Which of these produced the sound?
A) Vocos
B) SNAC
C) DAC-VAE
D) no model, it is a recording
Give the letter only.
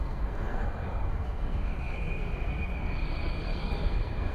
B